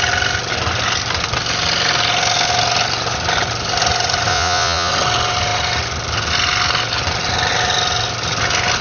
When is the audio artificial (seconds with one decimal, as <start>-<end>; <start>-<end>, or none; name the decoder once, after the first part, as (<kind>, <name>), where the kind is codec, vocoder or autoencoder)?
4.3-4.9 (vocoder, Vocos)